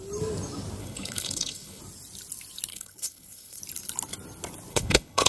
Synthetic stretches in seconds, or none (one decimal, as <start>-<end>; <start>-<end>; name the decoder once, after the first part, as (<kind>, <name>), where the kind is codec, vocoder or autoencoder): 0.8-1.8 (codec, HILCodec); 2.7-3.6; 4.7-5.3